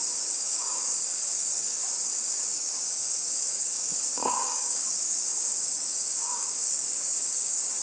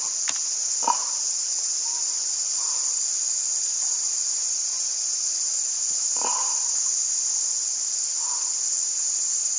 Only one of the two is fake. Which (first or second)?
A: first